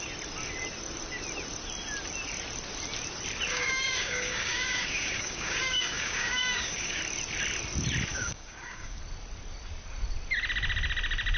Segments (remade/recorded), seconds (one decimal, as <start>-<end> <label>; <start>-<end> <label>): 0.0-3.5 recorded; 3.5-7.0 remade; 7.0-8.1 recorded; 8.1-9.0 remade; 9.0-11.4 recorded